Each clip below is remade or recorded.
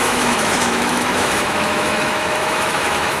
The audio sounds remade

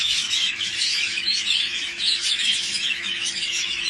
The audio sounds remade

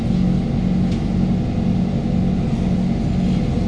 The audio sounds recorded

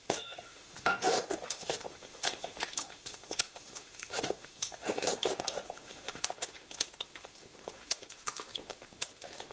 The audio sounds remade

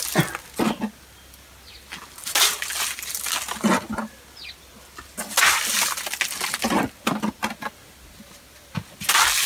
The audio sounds recorded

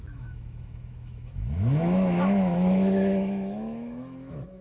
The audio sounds remade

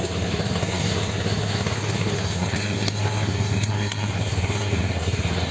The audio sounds remade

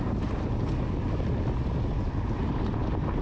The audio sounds recorded